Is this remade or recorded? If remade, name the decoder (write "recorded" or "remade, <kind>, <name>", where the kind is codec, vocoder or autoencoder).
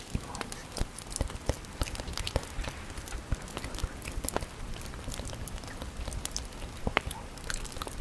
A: recorded